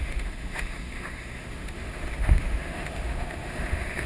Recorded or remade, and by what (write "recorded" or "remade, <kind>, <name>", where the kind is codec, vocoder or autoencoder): remade, autoencoder, DAC-VAE